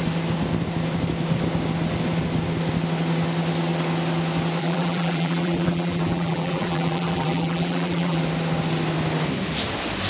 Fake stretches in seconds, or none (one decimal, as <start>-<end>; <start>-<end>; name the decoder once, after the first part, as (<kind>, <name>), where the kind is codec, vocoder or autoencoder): 4.6-8.2 (vocoder, BigVGAN v2)